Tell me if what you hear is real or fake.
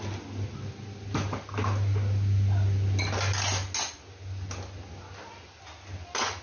real